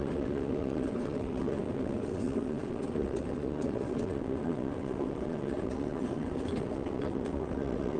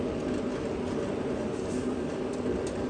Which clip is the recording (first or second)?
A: second